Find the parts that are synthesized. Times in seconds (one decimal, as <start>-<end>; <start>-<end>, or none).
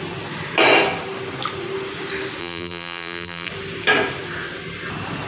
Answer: 2.4-3.5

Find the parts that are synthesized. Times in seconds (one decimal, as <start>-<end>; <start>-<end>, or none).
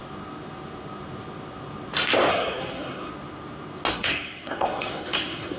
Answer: 2.3-3.1; 3.9-5.6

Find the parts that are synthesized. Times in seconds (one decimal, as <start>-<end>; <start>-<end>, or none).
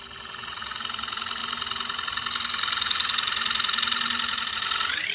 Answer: none